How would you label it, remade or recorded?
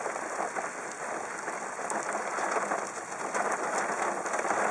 recorded